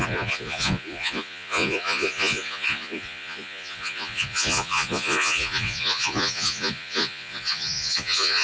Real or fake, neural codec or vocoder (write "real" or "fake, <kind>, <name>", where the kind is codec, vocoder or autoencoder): fake, vocoder, Vocos